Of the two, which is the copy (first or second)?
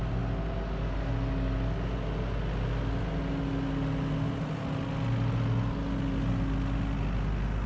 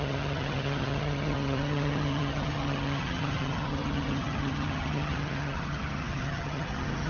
second